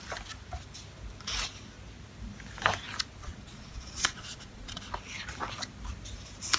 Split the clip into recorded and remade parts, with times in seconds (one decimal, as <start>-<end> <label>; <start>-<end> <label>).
0.0-3.2 recorded; 3.2-4.8 remade; 4.8-6.6 recorded